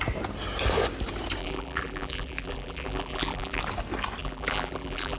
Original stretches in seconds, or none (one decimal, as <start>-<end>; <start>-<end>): 0.0-1.4; 3.6-4.2